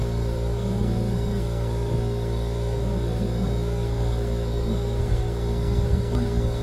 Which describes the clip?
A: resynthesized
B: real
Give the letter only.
A